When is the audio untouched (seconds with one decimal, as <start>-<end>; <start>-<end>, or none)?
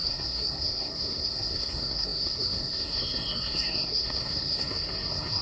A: none